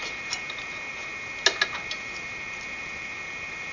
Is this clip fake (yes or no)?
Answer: no